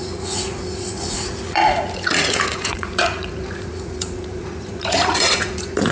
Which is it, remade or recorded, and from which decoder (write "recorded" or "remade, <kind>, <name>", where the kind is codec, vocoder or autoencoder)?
remade, vocoder, Vocos